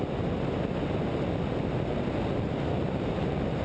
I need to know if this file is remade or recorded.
recorded